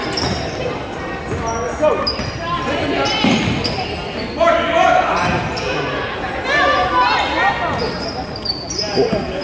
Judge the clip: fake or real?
real